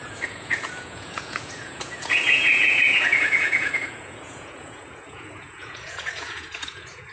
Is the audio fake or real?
fake